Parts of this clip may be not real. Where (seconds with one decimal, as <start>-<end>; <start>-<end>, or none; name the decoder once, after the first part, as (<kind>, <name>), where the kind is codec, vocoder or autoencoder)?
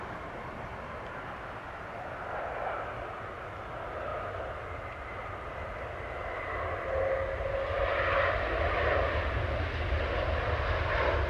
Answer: none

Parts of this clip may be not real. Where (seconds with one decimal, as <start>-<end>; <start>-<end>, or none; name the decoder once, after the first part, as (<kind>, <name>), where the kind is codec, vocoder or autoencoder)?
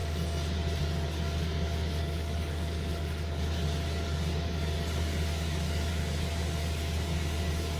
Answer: 0.8-7.8 (codec, DAC)